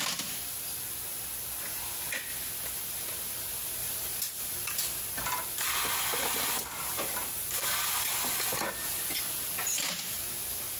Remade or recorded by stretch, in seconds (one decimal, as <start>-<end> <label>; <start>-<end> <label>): 0.0-3.8 recorded; 3.8-4.4 remade; 4.4-10.8 recorded